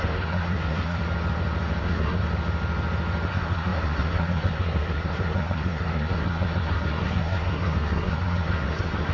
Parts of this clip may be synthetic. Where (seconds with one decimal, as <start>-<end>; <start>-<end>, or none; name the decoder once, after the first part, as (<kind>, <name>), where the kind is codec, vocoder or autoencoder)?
0.0-1.0 (codec, SNAC); 1.8-2.2; 3.3-9.1

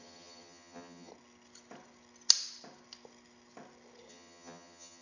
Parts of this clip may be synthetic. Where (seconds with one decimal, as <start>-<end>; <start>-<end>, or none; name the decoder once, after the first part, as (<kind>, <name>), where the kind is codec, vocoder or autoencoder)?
0.0-1.1 (vocoder, HiFi-GAN); 4.1-5.0

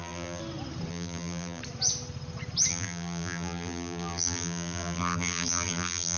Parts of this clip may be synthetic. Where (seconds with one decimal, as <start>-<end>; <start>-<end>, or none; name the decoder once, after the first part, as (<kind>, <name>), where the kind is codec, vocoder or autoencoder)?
0.0-0.4 (vocoder, BigVGAN v2); 0.9-1.6; 2.7-6.2

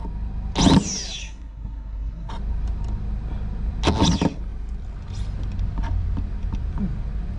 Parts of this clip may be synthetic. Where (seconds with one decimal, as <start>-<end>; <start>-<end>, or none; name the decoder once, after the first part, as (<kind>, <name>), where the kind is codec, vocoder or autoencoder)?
1.2-2.3 (codec, SNAC)

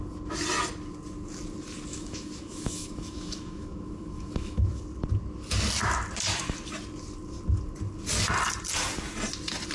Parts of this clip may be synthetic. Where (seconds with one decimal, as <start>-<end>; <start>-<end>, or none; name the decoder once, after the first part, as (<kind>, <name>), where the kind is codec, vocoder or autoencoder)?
1.9-4.8 (autoencoder, DAC-VAE)

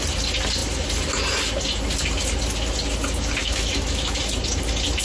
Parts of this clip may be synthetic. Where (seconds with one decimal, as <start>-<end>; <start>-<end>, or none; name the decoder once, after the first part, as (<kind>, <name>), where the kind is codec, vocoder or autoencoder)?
3.4-4.2 (autoencoder, DAC-VAE)